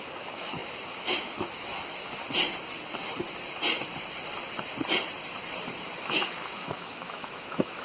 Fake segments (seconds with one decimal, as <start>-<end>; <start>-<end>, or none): 0.0-2.2; 5.7-7.8